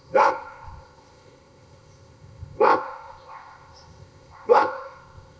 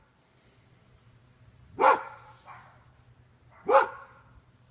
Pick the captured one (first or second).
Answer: second